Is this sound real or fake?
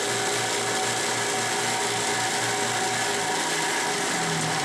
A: real